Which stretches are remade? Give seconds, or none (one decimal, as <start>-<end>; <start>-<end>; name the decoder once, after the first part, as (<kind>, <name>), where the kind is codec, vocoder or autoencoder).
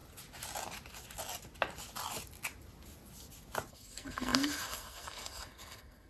3.7-6.1 (codec, SNAC)